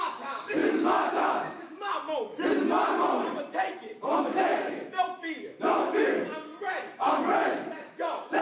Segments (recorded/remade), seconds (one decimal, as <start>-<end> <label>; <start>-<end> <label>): 0.0-0.6 remade; 0.6-1.1 recorded; 1.1-1.9 remade; 1.9-4.1 recorded; 4.1-6.5 remade; 6.5-7.0 recorded; 7.0-8.4 remade